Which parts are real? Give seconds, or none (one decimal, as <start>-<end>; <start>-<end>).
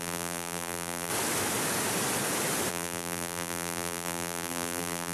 1.1-2.7